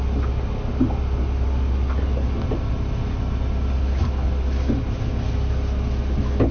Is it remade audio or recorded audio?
recorded